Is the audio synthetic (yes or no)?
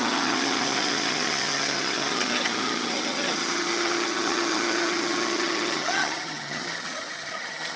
yes